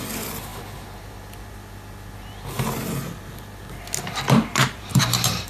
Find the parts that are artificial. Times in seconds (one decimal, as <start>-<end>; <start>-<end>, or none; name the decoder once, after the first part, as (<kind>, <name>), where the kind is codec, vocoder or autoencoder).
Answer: 4.5-5.5 (vocoder, BigVGAN v2)